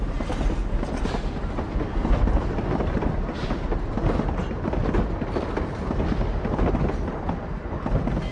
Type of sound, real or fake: real